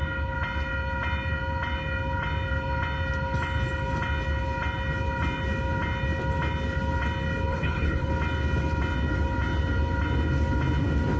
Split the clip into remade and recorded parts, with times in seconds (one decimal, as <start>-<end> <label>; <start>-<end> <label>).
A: 0.0-7.5 recorded; 7.5-8.1 remade; 8.1-11.2 recorded